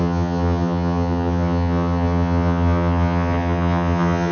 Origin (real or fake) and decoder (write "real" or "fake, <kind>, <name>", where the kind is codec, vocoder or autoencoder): fake, vocoder, HiFi-GAN